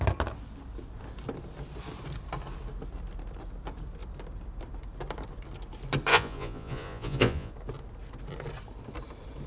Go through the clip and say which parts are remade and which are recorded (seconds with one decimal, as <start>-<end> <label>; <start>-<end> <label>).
0.0-6.1 recorded; 6.1-7.5 remade; 7.5-9.5 recorded